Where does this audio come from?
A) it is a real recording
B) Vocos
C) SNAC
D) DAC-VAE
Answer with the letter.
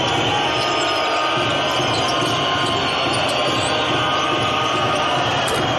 A